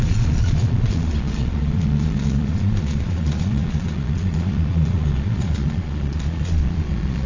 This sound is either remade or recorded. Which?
remade